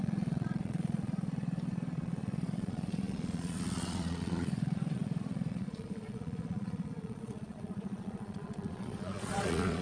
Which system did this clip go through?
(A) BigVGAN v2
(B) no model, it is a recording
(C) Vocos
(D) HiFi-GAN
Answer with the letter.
C